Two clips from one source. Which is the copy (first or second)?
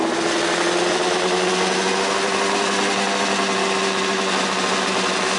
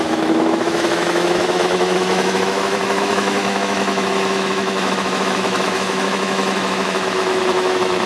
second